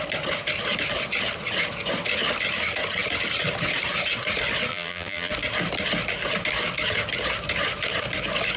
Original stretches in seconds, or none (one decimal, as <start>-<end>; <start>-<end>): 0.0-4.7; 5.3-8.6